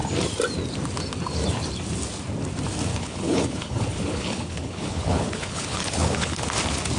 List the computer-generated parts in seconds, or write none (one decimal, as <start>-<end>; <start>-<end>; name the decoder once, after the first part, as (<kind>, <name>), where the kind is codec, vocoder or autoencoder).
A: 2.9-6.4 (codec, HILCodec)